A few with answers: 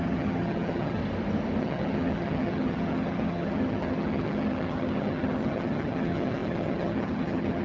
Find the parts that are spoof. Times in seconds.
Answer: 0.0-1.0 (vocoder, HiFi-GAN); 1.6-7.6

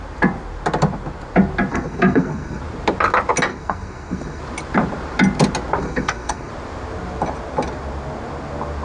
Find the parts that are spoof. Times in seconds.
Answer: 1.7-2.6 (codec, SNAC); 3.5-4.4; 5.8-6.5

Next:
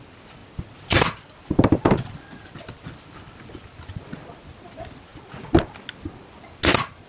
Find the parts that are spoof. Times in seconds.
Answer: none

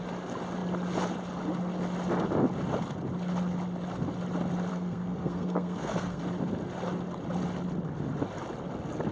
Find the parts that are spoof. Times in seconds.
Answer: 4.7-6.2 (codec, SNAC)